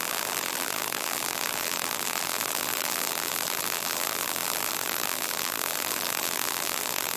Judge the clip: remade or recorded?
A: remade